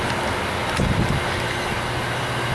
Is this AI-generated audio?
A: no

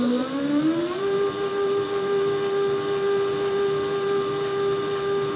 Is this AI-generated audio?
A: no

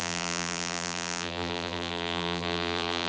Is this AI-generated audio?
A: yes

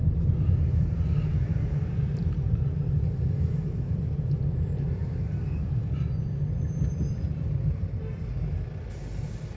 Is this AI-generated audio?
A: yes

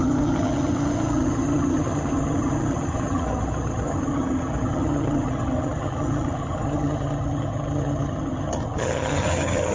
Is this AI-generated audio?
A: yes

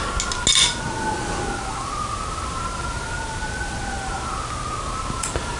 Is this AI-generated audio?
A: no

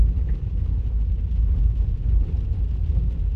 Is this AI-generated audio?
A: no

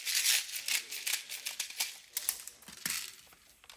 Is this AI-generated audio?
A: no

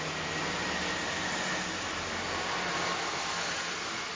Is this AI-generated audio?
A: no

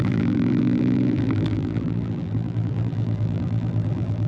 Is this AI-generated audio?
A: yes